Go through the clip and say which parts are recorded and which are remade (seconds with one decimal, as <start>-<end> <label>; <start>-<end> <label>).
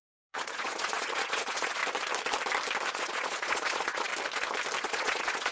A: 0.0-1.8 remade; 1.8-2.9 recorded; 2.9-4.1 remade; 4.1-4.8 recorded; 4.8-5.5 remade